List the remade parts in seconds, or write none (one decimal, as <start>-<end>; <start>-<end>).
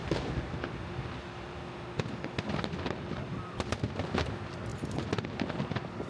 none